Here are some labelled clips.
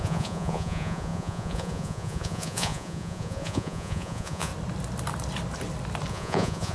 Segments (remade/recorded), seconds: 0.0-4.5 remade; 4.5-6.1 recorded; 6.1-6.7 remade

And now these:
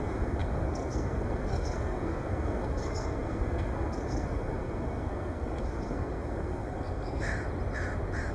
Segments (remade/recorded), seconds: 0.0-7.3 remade; 7.3-8.3 recorded